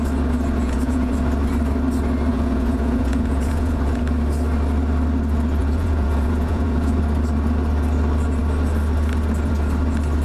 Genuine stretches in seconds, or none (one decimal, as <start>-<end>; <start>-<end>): 0.0-0.6; 1.1-2.3; 4.0-5.6; 7.0-10.2